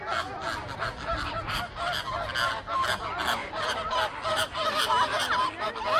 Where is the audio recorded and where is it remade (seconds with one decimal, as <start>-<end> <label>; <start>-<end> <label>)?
0.0-1.1 recorded; 1.1-2.0 remade; 2.0-3.4 recorded; 3.4-3.9 remade; 3.9-4.3 recorded; 4.3-5.4 remade; 5.4-6.0 recorded